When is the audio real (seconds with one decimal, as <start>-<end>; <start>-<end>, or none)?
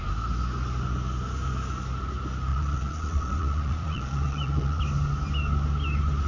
0.0-2.5; 4.8-6.3